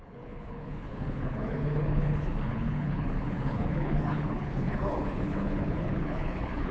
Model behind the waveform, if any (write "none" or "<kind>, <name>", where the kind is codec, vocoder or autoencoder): codec, HILCodec